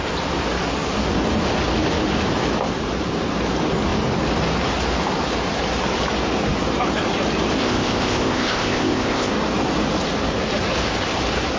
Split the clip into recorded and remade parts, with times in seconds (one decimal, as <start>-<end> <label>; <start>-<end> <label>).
0.0-7.6 recorded; 7.6-9.3 remade; 9.3-11.6 recorded